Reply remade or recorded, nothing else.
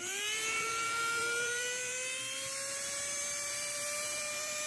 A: remade